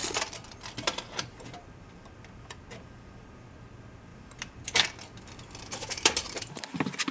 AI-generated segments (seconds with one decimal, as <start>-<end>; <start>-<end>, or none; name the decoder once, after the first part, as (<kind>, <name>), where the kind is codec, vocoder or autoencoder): 0.0-1.9 (vocoder, BigVGAN v2); 4.1-7.1